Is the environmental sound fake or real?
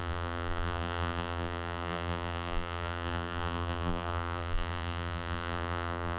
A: fake